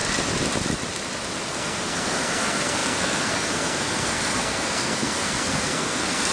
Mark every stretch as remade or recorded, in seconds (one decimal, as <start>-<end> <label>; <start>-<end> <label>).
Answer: 0.0-1.5 recorded; 1.5-6.3 remade